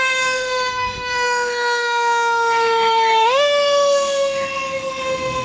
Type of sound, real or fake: fake